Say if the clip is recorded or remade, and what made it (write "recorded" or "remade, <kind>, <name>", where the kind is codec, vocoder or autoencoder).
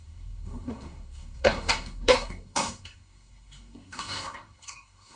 remade, codec, SNAC